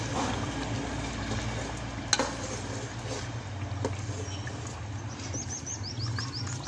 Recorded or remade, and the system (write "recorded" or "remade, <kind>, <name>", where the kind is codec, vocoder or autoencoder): recorded